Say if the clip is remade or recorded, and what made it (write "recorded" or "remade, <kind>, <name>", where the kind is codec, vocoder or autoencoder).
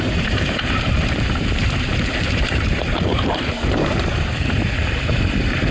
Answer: remade, vocoder, BigVGAN v2